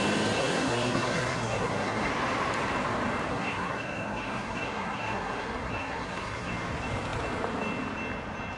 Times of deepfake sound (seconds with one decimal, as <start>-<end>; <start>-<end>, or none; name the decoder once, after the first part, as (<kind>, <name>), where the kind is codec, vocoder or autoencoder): 0.4-2.1 (codec, SNAC); 3.3-6.5

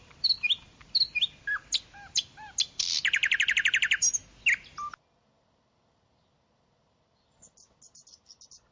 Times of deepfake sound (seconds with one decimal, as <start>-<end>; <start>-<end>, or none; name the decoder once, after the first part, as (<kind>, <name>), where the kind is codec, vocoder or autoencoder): none

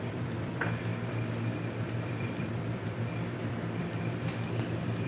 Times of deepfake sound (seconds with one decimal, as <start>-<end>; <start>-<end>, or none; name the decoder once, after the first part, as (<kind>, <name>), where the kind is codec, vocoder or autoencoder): 0.0-5.1 (vocoder, BigVGAN v2)

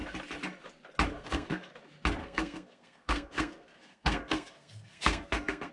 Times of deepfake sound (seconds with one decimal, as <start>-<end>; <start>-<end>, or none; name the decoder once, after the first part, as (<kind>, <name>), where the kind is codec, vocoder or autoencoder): 1.1-1.7 (codec, SNAC); 2.2-5.7

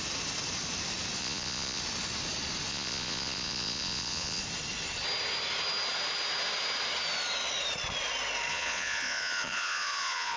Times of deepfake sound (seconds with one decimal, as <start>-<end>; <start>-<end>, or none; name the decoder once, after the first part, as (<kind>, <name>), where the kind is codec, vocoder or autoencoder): 1.2-1.8 (vocoder, Vocos); 2.7-4.4; 8.5-10.4